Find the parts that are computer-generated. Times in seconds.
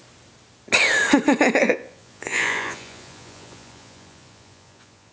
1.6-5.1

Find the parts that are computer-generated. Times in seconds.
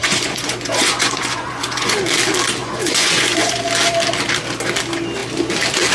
0.0-2.0; 2.6-3.6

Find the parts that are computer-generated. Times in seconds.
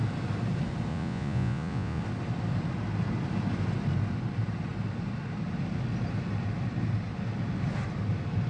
0.9-2.0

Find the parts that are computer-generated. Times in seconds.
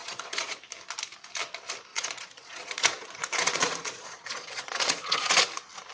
0.0-0.6; 1.9-5.4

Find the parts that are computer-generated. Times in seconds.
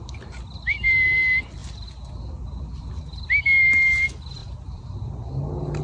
none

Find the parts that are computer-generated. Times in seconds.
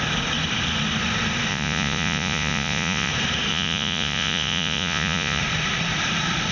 1.5-3.1; 3.5-5.4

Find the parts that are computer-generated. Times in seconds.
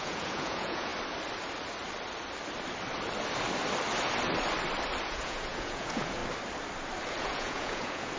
0.0-0.9; 5.0-6.2; 7.2-8.2